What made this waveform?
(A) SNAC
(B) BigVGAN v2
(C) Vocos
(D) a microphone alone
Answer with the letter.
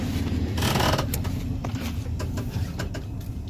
D